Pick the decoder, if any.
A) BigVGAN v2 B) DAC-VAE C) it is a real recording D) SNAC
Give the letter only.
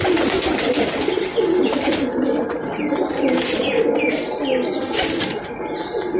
C